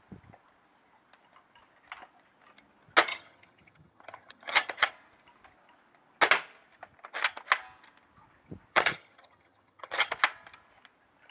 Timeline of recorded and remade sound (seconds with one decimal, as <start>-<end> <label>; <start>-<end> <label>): 0.0-3.1 recorded; 3.1-4.9 remade; 4.9-8.7 recorded; 8.7-10.1 remade; 10.1-11.3 recorded